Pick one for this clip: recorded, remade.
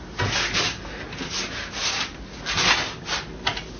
recorded